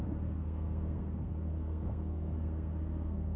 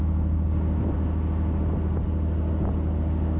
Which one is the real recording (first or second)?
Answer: second